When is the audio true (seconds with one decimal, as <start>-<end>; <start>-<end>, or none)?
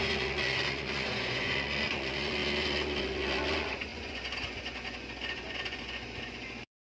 none